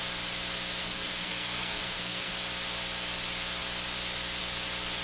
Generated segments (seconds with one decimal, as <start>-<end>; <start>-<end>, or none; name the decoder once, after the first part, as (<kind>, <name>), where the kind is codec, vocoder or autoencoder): 0.8-2.3 (codec, SNAC)